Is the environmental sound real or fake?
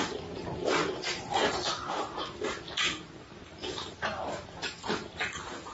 fake